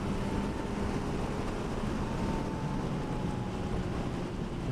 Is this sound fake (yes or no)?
no